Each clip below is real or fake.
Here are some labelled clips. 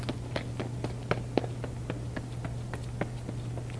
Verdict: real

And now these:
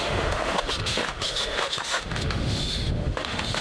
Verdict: fake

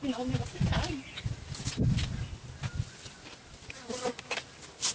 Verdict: real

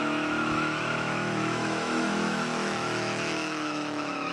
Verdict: fake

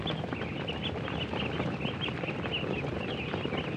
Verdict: real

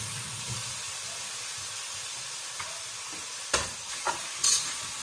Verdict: real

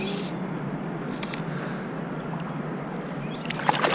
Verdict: real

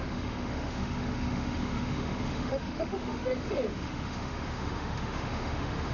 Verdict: fake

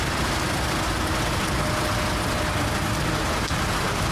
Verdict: real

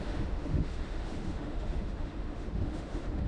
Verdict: fake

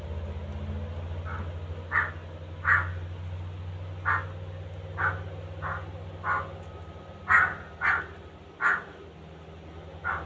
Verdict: real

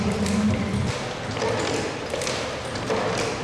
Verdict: real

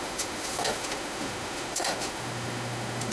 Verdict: fake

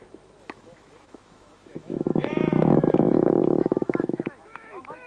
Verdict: fake